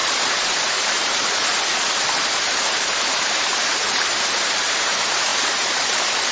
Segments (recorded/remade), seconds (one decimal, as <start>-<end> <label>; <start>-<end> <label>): 0.0-1.7 remade; 1.7-2.6 recorded; 2.6-6.3 remade